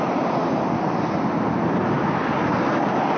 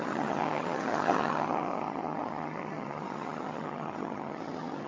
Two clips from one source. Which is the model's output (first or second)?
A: second